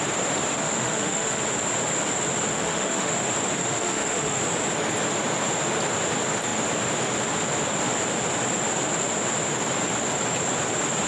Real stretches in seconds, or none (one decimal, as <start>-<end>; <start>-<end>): 0.0-0.5; 1.4-2.5; 3.1-3.6; 4.4-11.1